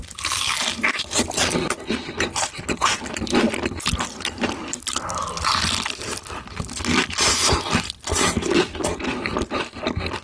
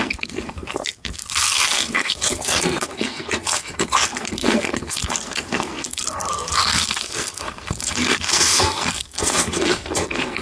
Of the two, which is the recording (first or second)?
first